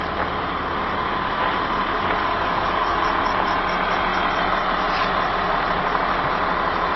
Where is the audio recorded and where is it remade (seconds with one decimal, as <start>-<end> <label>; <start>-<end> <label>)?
0.0-2.2 recorded; 2.2-3.0 remade; 3.0-7.0 recorded